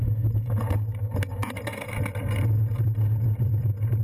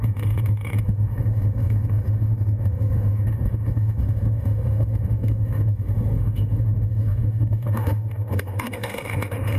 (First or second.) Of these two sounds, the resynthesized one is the second